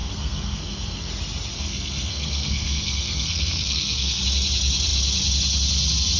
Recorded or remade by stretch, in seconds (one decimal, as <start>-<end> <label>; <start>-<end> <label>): 0.0-1.1 remade; 1.1-1.5 recorded; 1.5-4.2 remade; 4.2-6.2 recorded